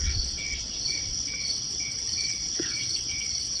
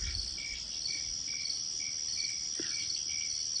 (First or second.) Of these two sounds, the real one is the second